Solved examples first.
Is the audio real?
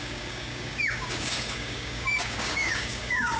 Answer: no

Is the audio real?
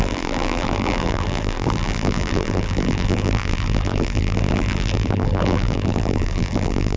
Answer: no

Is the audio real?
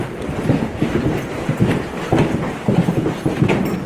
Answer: yes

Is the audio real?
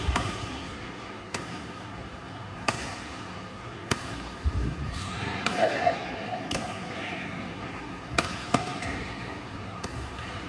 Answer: no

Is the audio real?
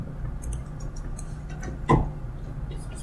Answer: yes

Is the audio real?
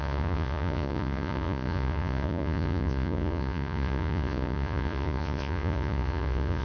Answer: no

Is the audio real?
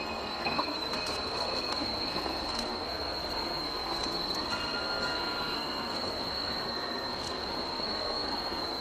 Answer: no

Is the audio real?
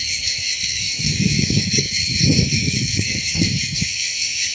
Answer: no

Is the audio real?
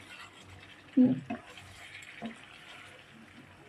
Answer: yes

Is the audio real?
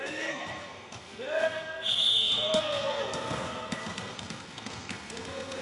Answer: no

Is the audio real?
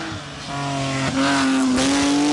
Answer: yes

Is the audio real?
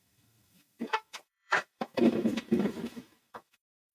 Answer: no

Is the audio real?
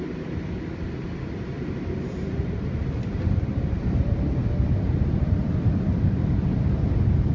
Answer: no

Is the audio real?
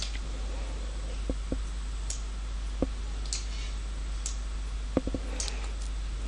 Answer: yes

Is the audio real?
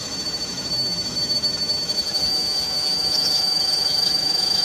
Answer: no